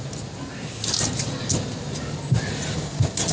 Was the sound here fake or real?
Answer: real